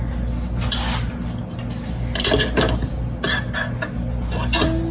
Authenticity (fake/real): real